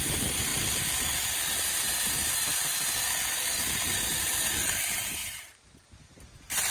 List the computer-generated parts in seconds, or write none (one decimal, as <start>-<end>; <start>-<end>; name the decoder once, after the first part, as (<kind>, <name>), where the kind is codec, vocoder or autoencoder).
5.2-6.7 (vocoder, BigVGAN v2)